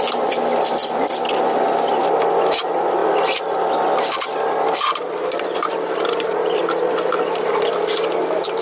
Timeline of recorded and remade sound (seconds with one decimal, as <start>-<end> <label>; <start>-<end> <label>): 0.0-8.6 recorded